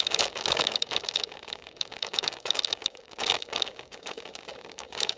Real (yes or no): no